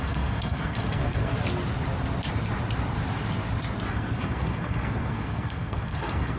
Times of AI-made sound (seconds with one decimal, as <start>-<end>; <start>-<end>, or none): 0.0-1.3; 3.9-6.4